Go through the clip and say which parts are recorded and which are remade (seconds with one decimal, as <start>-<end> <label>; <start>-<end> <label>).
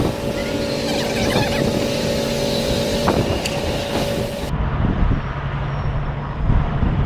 0.0-2.9 recorded; 2.9-3.8 remade; 3.8-5.9 recorded; 5.9-7.1 remade